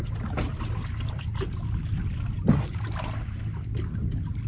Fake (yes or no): no